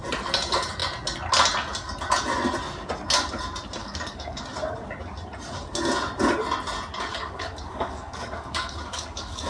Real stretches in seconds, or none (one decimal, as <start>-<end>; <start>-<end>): 0.0-3.8; 4.4-7.1

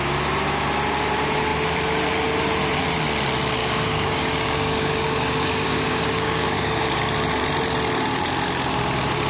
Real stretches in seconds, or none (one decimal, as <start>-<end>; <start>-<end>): 0.0-3.6; 7.0-9.3

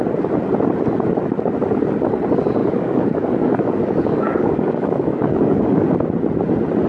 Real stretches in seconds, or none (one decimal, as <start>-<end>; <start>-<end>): 0.0-2.6; 5.9-6.9

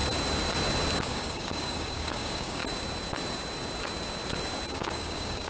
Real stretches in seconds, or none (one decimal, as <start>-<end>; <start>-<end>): 0.0-1.0; 2.6-4.7

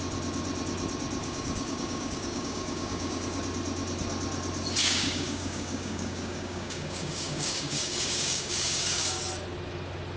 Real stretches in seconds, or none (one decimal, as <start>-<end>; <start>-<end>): 0.0-1.2; 3.4-4.8; 9.2-10.2

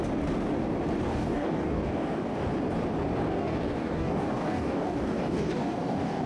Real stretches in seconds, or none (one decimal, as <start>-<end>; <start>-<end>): 0.0-1.1; 2.5-3.3

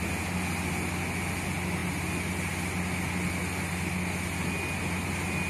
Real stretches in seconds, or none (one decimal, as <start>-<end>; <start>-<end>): 0.0-5.5

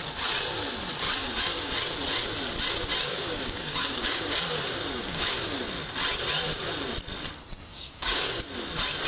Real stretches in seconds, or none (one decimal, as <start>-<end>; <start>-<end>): 0.0-1.2; 1.8-3.1; 4.4-5.0; 5.6-7.7; 8.4-9.1